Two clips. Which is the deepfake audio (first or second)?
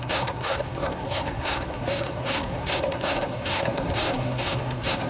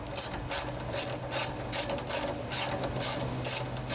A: first